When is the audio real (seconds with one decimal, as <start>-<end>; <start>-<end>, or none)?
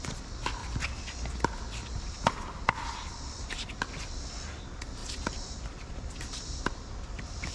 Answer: 0.0-0.6; 3.8-5.0